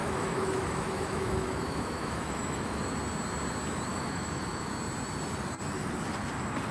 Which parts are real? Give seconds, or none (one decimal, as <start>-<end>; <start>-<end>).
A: 2.8-3.9; 4.7-6.7